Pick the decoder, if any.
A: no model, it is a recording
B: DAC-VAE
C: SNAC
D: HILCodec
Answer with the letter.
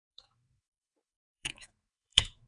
B